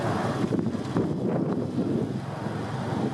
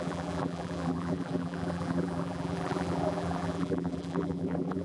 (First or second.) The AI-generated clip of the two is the second